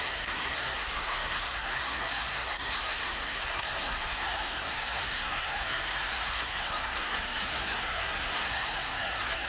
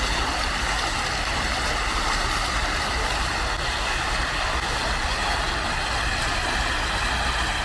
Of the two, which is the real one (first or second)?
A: second